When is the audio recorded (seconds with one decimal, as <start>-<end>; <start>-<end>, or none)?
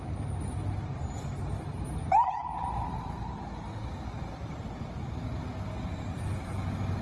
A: 0.0-7.0